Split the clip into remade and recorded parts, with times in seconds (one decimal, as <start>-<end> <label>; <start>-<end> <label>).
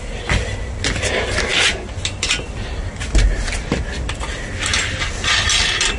0.0-6.0 recorded